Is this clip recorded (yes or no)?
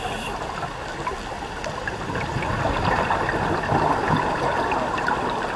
no